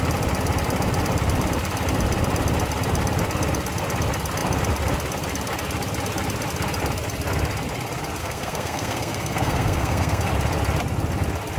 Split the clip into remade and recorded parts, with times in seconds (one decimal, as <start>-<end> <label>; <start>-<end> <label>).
0.0-8.2 recorded; 8.2-10.3 remade; 10.3-11.6 recorded